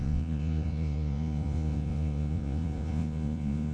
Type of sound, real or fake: fake